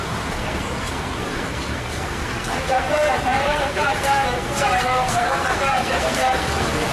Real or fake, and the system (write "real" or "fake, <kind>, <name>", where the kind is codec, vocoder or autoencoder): fake, codec, SNAC